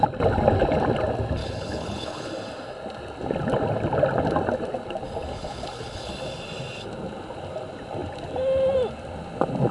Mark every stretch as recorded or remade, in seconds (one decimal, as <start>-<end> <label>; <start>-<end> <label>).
0.0-1.4 recorded; 1.4-2.3 remade; 2.3-5.3 recorded; 5.3-6.1 remade; 6.1-9.7 recorded

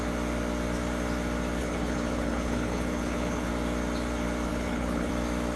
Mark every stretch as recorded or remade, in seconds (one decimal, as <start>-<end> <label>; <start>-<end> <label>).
0.0-1.6 recorded; 1.6-3.5 remade; 3.5-4.5 recorded; 4.5-5.1 remade; 5.1-5.6 recorded

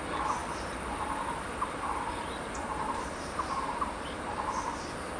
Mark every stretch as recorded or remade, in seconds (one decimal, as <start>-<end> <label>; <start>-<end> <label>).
0.0-5.2 recorded

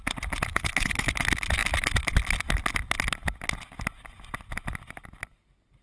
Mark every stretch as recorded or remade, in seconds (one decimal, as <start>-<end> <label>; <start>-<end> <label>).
0.0-0.5 recorded; 0.5-1.1 remade; 1.1-5.8 recorded

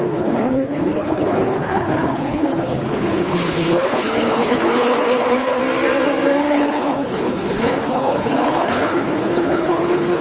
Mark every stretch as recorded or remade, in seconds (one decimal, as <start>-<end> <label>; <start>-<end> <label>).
0.0-5.6 remade; 5.6-6.4 recorded; 6.4-10.2 remade